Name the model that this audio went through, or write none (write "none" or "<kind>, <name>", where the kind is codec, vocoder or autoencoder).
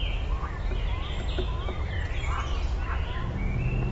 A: none